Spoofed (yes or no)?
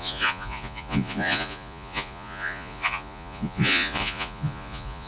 yes